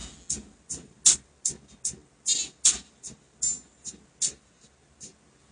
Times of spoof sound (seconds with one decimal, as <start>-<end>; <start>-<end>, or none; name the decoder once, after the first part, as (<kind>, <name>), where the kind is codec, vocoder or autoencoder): none